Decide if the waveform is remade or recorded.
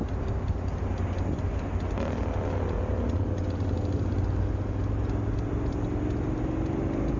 recorded